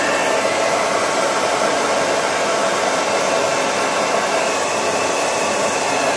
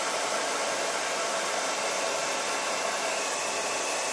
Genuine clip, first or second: first